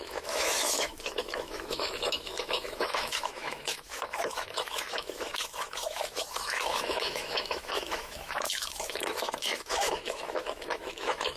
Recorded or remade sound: remade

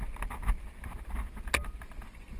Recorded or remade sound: recorded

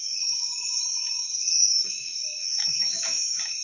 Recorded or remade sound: remade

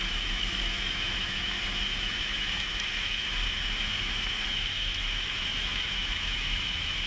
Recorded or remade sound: remade